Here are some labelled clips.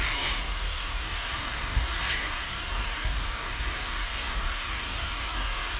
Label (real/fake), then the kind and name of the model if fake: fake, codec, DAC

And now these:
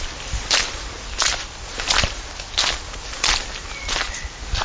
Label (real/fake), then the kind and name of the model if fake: real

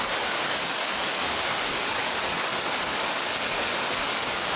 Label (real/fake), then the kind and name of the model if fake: fake, codec, DAC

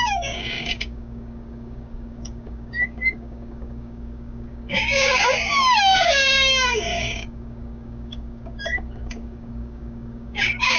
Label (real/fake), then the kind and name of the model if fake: fake, codec, DAC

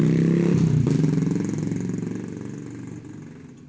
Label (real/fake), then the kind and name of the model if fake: real